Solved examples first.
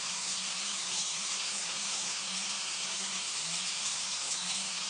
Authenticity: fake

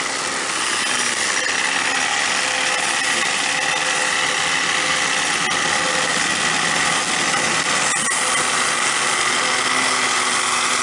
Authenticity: real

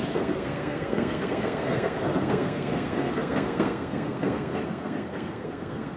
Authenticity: fake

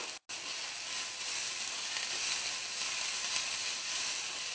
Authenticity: real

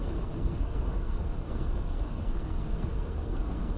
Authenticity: fake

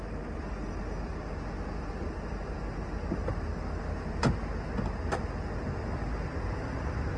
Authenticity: real